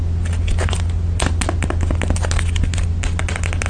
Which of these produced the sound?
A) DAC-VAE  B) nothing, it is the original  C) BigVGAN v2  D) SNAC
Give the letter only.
B